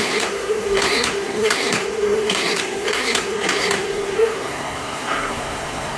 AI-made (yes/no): yes